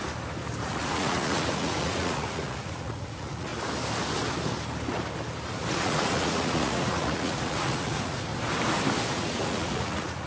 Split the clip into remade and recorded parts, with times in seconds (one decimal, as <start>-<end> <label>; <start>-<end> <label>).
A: 0.0-0.7 recorded; 0.7-3.5 remade; 3.5-5.7 recorded; 5.7-8.3 remade; 8.3-9.1 recorded; 9.1-10.3 remade